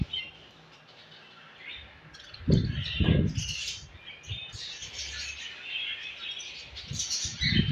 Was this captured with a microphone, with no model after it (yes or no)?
yes